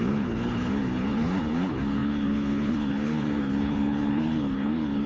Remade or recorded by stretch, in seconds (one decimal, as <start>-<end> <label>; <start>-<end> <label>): 0.0-5.1 remade